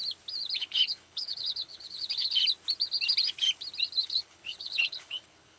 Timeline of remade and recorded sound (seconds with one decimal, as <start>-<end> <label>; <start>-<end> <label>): 0.0-0.6 recorded; 0.6-2.4 remade; 2.4-4.0 recorded; 4.0-5.6 remade